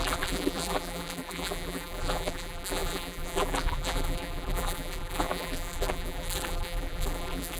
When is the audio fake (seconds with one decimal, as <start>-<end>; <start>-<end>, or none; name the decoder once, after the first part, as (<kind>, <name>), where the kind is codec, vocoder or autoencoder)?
0.0-7.6 (vocoder, BigVGAN v2)